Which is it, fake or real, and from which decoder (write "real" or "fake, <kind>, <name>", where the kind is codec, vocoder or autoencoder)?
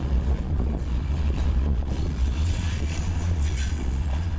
fake, vocoder, Vocos